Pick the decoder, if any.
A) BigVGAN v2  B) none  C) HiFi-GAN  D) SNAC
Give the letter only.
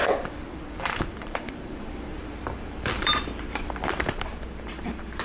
A